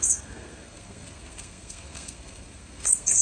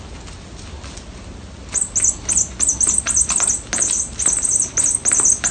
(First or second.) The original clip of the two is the second